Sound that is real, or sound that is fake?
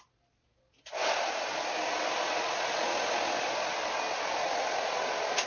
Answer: real